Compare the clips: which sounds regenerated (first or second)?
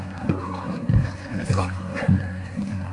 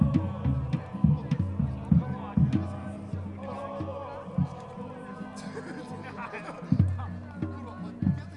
first